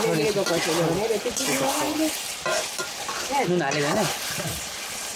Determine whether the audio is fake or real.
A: real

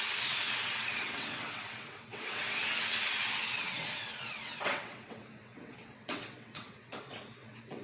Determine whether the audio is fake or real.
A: fake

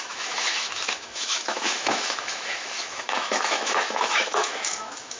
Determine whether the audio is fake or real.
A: fake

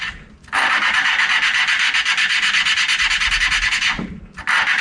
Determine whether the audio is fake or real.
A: real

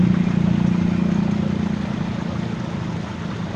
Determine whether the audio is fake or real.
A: real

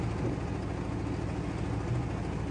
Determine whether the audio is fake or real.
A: real